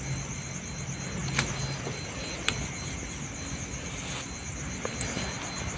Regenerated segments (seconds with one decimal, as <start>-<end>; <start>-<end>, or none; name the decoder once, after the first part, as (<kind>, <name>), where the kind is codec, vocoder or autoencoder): none